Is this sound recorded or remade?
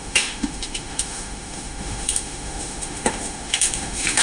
remade